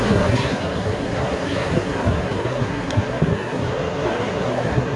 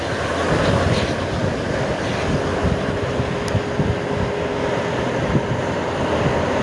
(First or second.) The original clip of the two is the second